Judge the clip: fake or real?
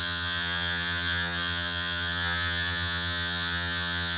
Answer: fake